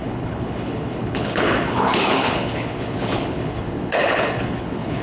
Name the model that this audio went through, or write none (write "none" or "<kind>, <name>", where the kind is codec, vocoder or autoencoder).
codec, HILCodec